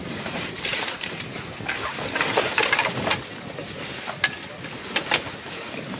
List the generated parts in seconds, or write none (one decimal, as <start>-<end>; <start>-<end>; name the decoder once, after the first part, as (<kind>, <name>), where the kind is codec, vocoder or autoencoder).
0.0-3.6 (vocoder, BigVGAN v2); 5.5-6.0

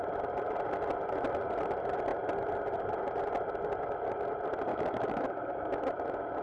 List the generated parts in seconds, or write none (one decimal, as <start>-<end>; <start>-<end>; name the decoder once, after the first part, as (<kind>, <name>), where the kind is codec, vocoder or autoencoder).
4.7-5.8 (autoencoder, DAC-VAE)

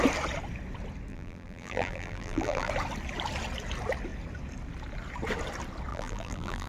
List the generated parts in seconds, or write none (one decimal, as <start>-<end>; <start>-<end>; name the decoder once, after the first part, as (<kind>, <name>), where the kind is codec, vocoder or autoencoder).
1.1-2.7 (vocoder, BigVGAN v2); 5.9-6.7

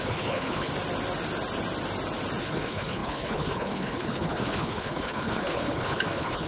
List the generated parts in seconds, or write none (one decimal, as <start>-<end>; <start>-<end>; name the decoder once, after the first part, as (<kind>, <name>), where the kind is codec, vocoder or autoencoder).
0.0-0.7 (codec, HILCodec); 2.4-6.5

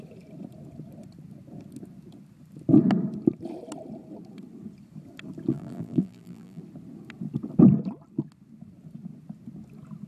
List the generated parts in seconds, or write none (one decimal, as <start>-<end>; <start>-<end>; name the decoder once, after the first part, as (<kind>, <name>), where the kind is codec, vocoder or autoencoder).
5.5-6.6 (vocoder, BigVGAN v2)

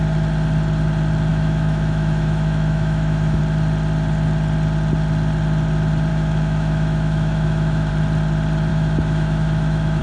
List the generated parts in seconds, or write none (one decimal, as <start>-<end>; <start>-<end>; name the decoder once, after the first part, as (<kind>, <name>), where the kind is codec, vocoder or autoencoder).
1.3-3.4 (autoencoder, DAC-VAE); 6.1-7.9; 8.7-10.0

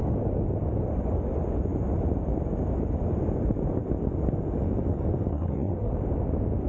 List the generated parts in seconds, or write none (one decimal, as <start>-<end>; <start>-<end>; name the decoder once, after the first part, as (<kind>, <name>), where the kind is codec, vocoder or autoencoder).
5.3-5.9 (codec, SNAC)